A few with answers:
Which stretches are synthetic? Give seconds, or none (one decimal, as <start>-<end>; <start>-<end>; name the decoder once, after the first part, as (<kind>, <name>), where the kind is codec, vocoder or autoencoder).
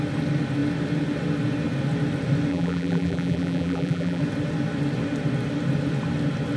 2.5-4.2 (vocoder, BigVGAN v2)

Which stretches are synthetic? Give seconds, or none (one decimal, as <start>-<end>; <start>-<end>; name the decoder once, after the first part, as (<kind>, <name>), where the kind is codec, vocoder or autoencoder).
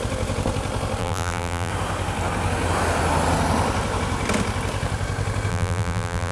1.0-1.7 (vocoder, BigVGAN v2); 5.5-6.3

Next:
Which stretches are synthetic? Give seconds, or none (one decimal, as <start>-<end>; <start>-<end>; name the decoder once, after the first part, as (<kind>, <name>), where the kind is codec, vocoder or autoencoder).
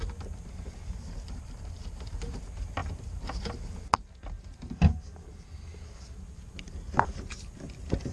none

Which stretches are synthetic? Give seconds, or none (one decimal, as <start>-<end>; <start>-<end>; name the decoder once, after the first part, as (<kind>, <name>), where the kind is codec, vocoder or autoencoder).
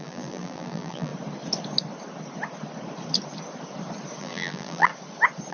0.0-1.1 (vocoder, BigVGAN v2); 4.2-4.9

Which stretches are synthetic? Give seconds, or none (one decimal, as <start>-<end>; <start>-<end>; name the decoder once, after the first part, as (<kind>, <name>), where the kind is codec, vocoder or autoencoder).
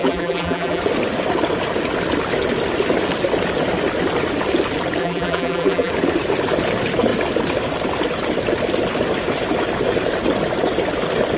0.0-0.8 (vocoder, BigVGAN v2); 5.0-5.9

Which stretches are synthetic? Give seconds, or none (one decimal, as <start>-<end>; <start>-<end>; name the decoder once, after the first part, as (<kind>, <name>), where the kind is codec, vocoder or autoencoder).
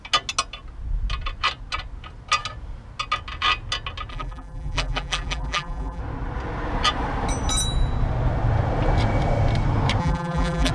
4.1-6.0 (vocoder, BigVGAN v2); 10.0-10.7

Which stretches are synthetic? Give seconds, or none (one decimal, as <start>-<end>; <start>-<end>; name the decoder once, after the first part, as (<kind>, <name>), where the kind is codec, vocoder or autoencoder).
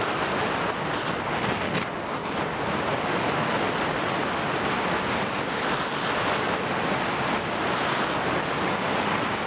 2.2-7.1 (vocoder, BigVGAN v2)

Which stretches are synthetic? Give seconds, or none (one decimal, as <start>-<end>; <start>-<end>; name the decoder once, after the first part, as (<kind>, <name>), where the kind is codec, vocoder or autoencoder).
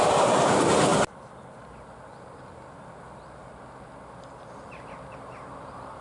0.0-0.9 (vocoder, BigVGAN v2); 4.5-6.0